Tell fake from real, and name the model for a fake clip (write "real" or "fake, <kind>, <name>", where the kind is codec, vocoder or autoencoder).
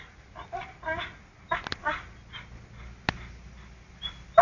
real